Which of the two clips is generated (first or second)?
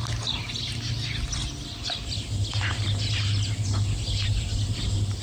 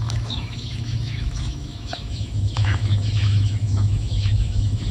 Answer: second